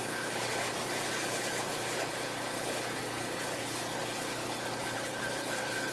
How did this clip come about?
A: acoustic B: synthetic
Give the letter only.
B